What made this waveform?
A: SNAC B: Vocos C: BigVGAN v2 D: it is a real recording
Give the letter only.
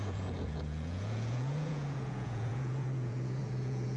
B